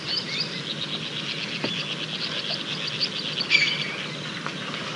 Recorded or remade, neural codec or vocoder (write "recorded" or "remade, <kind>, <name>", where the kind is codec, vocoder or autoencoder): recorded